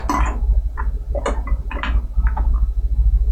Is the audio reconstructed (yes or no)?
no